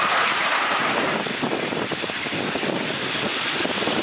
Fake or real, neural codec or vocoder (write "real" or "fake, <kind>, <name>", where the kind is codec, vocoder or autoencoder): real